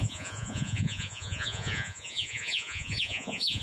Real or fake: fake